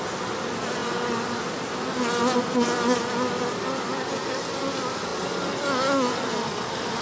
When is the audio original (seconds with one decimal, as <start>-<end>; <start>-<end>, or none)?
0.0-7.0